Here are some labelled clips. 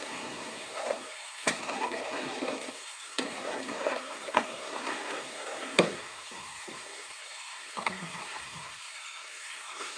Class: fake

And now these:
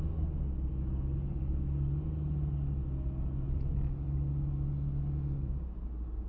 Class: real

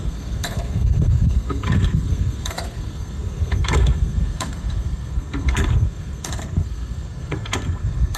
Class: fake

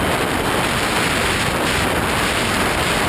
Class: real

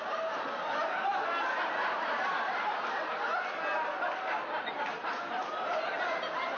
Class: real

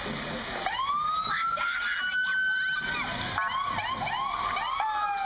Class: real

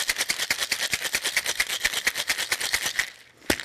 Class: real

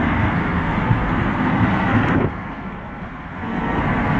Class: fake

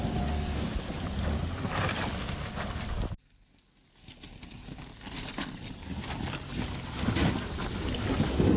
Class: real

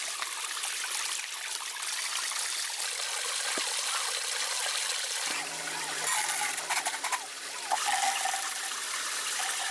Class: real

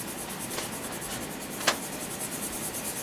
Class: real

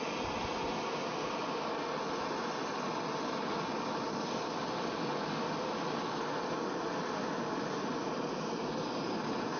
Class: real